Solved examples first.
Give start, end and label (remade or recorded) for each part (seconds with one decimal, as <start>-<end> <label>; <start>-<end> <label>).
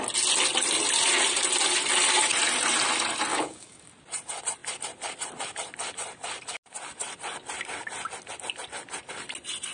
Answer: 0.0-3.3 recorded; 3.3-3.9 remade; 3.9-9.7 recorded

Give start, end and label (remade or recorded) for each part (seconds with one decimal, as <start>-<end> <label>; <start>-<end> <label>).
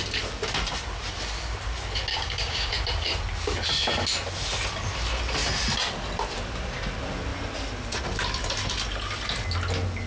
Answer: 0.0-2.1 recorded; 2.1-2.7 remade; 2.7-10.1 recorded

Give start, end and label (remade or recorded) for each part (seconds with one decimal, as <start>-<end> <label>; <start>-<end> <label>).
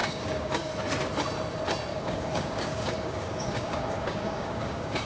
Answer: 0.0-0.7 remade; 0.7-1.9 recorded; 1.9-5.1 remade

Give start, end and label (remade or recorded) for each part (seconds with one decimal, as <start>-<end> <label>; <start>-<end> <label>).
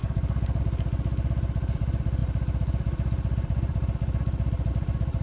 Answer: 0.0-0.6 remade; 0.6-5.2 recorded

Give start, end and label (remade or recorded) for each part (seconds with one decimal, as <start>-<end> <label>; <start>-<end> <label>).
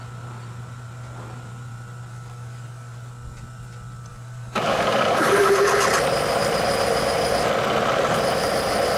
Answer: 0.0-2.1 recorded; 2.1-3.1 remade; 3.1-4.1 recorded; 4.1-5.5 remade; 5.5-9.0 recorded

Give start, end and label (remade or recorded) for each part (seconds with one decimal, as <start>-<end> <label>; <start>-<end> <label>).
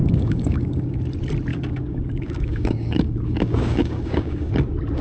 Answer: 0.0-1.0 remade; 1.0-1.5 recorded; 1.5-4.5 remade; 4.5-5.0 recorded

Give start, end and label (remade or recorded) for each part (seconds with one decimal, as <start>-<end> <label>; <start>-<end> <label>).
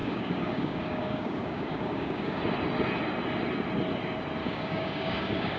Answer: 0.0-2.4 remade; 2.4-4.4 recorded; 4.4-5.6 remade